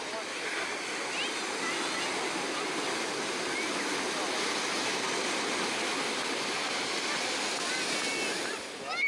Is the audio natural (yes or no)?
yes